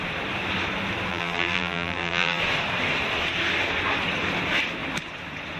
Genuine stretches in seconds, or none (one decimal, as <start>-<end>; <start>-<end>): 0.0-1.1; 2.4-5.6